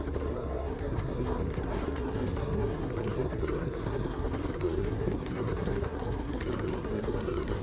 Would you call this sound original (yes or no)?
no